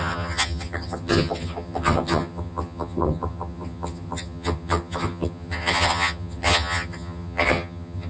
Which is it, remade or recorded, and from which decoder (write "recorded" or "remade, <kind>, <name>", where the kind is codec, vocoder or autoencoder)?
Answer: remade, vocoder, HiFi-GAN